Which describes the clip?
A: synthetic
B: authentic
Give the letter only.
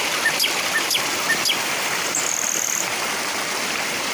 B